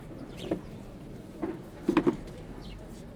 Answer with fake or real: fake